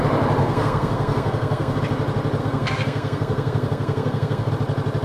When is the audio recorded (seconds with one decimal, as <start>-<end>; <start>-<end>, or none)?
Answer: 0.0-0.4; 1.8-2.4; 4.5-5.0